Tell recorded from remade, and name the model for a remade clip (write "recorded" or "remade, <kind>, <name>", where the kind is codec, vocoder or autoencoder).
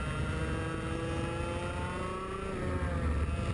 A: recorded